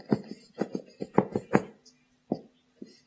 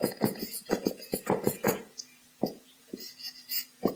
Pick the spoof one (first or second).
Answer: second